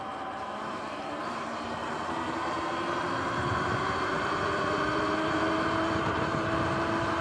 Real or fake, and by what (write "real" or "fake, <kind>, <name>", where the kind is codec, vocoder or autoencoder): fake, vocoder, BigVGAN v2